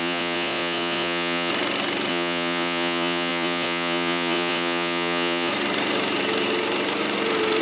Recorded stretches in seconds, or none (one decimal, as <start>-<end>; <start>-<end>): 1.5-2.1; 5.5-7.6